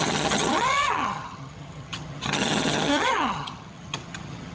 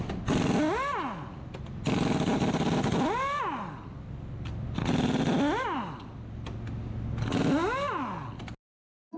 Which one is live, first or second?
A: second